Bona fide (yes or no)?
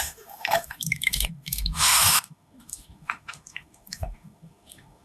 no